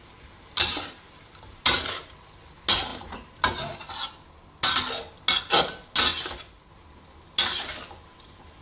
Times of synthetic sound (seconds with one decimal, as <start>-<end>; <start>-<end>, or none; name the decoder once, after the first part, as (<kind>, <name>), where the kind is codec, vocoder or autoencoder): none